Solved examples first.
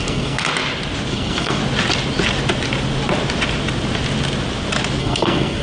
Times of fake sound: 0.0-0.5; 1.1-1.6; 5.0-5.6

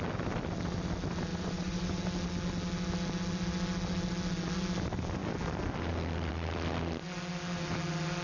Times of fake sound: 1.3-2.0

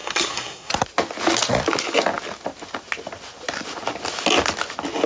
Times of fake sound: 0.0-0.7

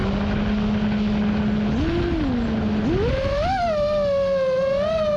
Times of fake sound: none

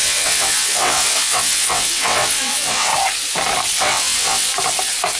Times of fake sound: 0.0-2.9; 3.8-4.5

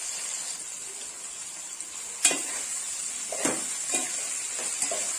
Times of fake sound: none